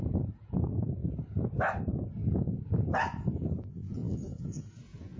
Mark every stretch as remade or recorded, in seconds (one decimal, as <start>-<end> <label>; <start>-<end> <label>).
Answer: 0.0-1.0 remade; 1.0-1.8 recorded; 1.8-2.2 remade; 2.2-3.0 recorded; 3.0-5.2 remade